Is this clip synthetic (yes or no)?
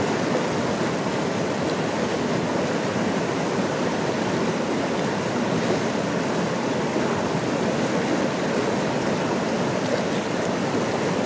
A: no